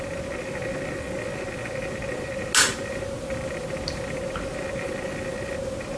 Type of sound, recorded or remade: recorded